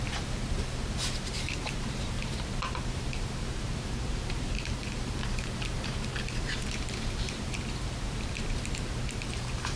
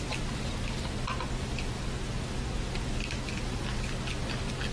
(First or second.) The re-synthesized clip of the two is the first